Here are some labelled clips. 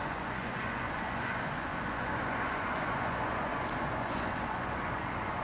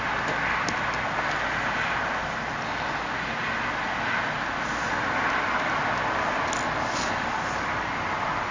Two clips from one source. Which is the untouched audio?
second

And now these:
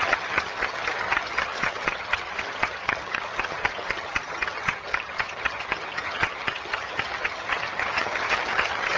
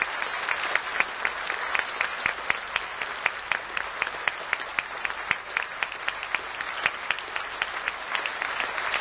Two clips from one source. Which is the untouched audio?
second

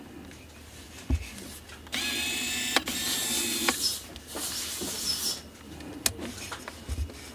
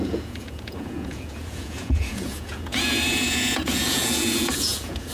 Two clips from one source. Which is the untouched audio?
first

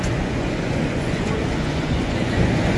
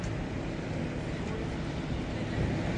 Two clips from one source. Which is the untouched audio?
second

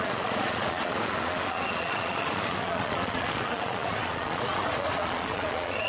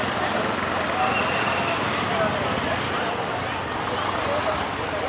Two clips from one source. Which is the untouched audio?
second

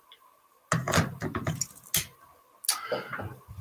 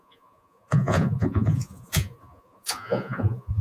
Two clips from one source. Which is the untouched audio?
first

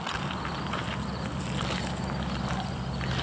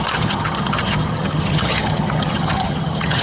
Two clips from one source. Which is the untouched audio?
first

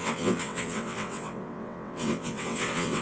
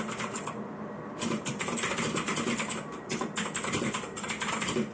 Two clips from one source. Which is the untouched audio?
second